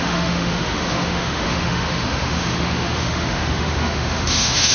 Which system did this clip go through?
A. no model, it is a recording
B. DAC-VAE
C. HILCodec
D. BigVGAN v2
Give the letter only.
B